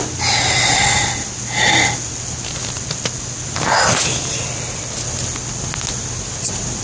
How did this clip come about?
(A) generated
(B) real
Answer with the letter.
B